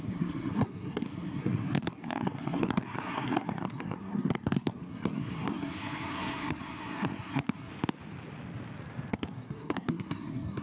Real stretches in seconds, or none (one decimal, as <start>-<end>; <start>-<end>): 7.7-9.1